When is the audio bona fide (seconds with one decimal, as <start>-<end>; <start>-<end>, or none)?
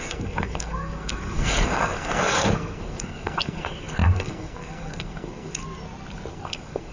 5.6-6.3